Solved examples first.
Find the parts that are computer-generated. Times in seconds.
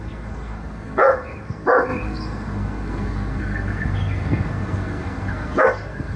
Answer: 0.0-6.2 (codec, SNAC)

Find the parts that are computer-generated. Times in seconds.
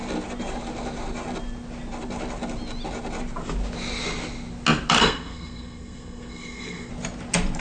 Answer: 5.0-6.9 (codec, SNAC)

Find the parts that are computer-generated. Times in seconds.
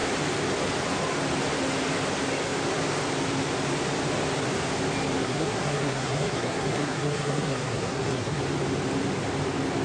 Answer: 5.2-8.4 (codec, SNAC)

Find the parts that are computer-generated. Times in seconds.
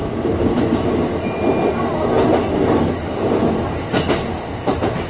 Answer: none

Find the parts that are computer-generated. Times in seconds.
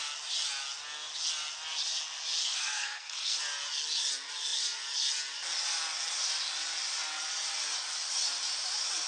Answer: 2.4-3.4 (codec, SNAC)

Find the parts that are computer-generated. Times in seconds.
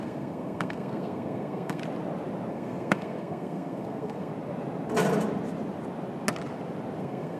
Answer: 0.0-1.8 (codec, SNAC); 2.5-4.3; 7.0-7.4